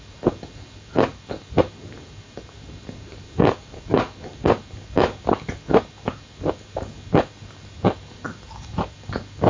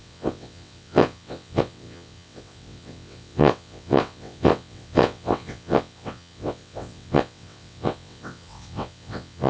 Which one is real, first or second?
first